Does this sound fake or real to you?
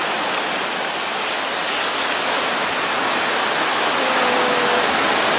real